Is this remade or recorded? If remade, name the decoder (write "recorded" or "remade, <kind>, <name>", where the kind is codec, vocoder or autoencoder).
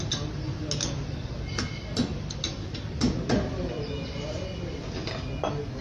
recorded